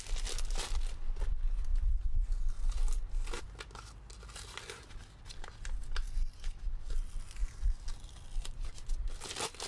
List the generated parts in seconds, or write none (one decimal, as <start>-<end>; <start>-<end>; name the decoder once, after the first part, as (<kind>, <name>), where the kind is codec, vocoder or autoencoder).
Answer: none